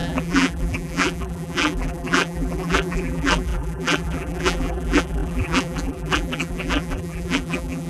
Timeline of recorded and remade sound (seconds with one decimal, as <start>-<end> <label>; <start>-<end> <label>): 0.0-7.9 remade

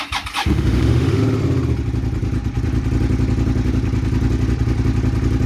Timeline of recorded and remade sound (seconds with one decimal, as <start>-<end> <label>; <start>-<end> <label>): 0.0-0.4 recorded; 0.4-1.2 remade; 1.2-5.5 recorded

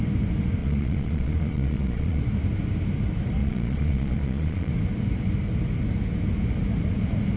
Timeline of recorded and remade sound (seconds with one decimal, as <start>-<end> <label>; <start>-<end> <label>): 0.0-0.6 recorded; 0.6-2.2 remade; 2.2-3.4 recorded; 3.4-4.7 remade; 4.7-7.4 recorded

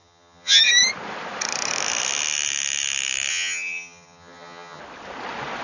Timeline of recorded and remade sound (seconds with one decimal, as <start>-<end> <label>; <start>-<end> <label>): 0.0-0.6 remade; 0.6-3.3 recorded; 3.3-4.8 remade; 4.8-5.6 recorded

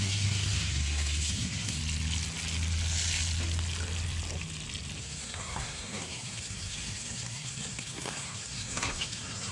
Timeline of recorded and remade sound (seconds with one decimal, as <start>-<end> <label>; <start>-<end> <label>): 0.0-1.8 remade; 1.8-5.0 recorded; 5.0-9.5 remade

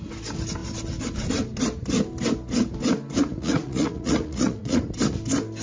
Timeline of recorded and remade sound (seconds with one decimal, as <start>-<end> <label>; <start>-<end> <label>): 0.0-3.3 recorded; 3.3-4.8 remade; 4.8-5.6 recorded